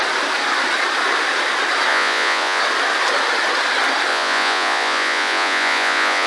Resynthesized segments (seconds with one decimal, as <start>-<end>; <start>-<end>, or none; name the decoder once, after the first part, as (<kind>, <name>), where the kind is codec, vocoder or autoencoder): 1.9-2.6 (vocoder, Vocos); 4.1-6.3